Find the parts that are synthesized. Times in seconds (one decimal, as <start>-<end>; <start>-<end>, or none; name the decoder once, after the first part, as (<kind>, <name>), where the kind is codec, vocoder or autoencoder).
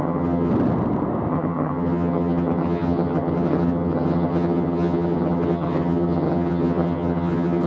0.0-0.5 (vocoder, HiFi-GAN); 1.3-7.7